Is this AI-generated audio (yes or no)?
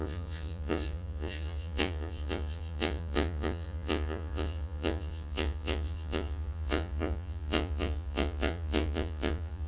yes